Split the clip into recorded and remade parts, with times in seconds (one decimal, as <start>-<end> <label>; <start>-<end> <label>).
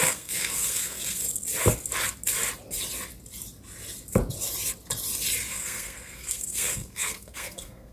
0.0-1.2 remade; 1.2-5.5 recorded; 5.5-7.9 remade